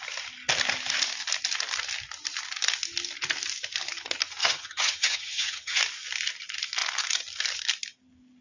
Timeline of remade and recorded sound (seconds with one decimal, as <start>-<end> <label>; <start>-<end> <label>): 0.0-4.4 recorded; 4.4-5.8 remade; 5.8-8.4 recorded